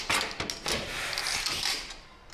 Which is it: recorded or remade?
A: recorded